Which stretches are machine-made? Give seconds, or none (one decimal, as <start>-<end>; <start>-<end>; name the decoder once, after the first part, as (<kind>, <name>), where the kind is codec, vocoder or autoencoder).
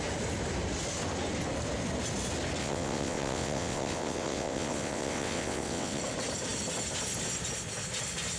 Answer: 2.6-6.0 (vocoder, WaveNeXt)